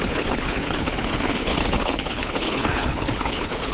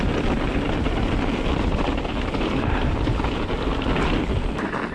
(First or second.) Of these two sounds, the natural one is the second